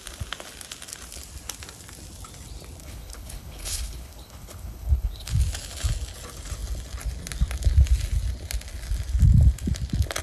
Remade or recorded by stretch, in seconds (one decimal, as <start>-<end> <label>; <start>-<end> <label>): 0.0-2.8 recorded; 2.8-5.4 remade; 5.4-10.2 recorded